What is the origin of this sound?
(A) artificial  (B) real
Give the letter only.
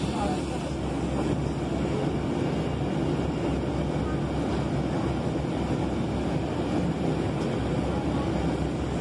B